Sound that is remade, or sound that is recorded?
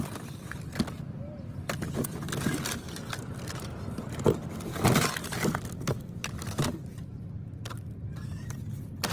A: recorded